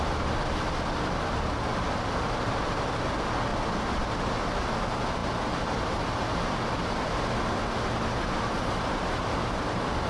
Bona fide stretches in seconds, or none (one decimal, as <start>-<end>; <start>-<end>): 0.0-1.7; 2.9-3.5; 4.1-10.1